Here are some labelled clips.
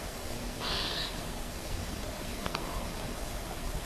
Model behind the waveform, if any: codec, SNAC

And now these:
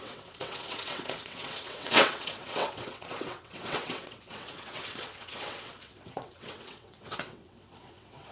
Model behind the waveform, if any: vocoder, WaveNeXt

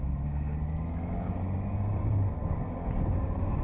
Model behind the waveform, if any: none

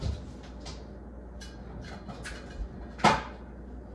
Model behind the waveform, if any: none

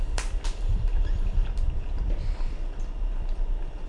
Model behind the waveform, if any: vocoder, BigVGAN v2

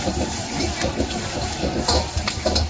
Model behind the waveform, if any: none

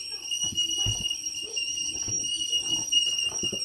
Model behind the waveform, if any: none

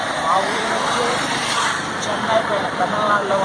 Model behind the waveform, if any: vocoder, BigVGAN v2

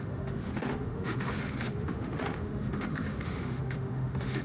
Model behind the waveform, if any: autoencoder, DAC-VAE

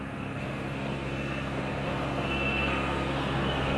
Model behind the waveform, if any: codec, SNAC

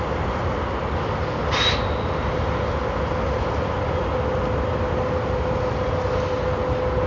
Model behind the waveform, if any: none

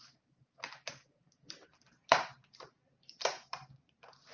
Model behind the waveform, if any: vocoder, BigVGAN v2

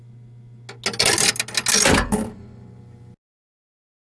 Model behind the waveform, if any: none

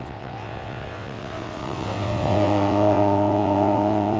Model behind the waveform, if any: vocoder, WaveNeXt